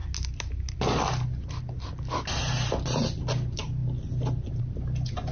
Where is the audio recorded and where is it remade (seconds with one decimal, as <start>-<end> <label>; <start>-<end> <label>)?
0.0-5.3 recorded